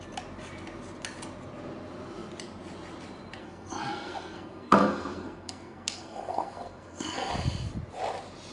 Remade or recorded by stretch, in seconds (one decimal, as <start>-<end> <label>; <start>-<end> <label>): 0.0-3.4 recorded; 3.4-7.3 remade; 7.3-8.5 recorded